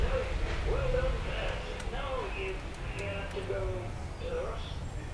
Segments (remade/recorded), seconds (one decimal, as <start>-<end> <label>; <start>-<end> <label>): 0.0-5.1 recorded